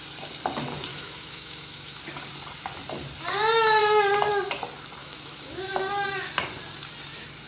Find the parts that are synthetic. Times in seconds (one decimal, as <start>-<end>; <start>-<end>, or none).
0.9-2.0; 5.0-5.8